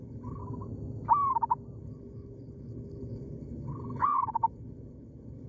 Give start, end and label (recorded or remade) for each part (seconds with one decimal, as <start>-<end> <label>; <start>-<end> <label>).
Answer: 0.0-0.4 remade; 0.4-1.8 recorded; 1.8-5.5 remade